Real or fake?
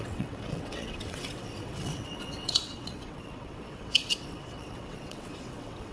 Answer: fake